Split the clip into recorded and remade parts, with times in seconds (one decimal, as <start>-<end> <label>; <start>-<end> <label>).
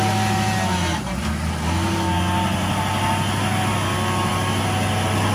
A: 0.0-5.3 recorded